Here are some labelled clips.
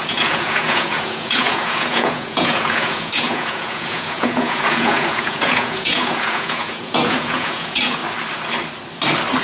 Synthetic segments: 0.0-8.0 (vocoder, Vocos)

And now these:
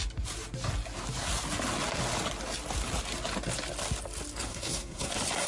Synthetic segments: 4.5-5.1 (codec, SNAC)

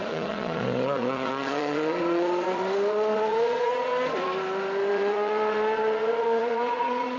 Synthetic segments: 0.0-3.9 (vocoder, Vocos); 4.9-7.2